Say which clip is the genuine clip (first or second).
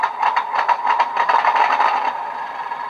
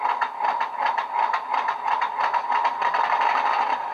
second